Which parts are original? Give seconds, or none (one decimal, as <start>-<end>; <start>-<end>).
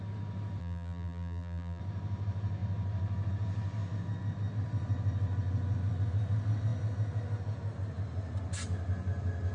0.0-0.6; 1.8-9.5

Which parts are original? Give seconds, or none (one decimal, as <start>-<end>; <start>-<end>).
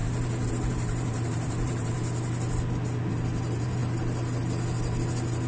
0.0-0.5; 2.0-3.1; 3.8-5.5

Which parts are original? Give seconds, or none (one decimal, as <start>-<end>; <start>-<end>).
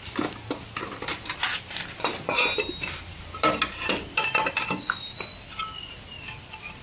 0.0-1.1; 3.6-6.8